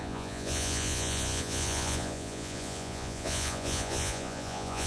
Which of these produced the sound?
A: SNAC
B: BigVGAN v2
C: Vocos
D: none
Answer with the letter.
C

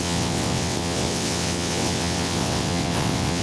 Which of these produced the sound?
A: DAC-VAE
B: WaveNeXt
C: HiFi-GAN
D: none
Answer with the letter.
B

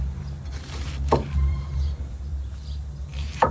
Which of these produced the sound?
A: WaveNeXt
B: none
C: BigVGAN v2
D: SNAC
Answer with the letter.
C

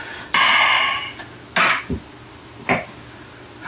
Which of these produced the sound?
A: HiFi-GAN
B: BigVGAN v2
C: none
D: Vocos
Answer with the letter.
C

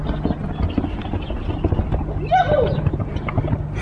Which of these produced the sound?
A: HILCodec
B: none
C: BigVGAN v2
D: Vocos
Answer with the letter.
B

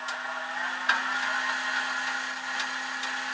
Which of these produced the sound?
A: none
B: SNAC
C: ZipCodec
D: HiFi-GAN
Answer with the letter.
A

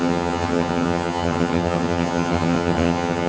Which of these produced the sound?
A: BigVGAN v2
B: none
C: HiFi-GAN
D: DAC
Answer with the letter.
C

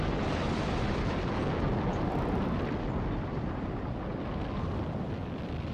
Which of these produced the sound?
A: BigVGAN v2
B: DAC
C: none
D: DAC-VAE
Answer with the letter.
C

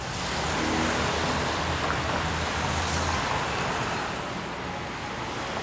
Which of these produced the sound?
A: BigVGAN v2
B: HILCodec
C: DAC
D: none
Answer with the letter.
D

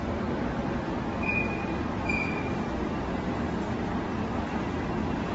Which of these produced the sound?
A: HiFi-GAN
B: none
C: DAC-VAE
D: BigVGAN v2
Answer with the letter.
D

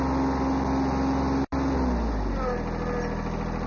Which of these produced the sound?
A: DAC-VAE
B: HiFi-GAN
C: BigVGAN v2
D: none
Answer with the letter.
D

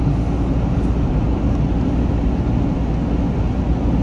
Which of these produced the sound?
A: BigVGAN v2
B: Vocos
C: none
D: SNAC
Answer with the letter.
C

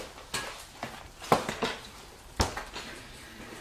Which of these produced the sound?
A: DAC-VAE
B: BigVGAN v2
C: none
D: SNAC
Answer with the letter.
C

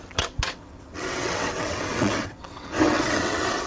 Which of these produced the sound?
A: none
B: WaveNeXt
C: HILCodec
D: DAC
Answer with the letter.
B